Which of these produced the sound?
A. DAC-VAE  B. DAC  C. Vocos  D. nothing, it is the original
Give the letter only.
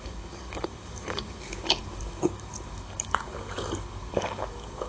B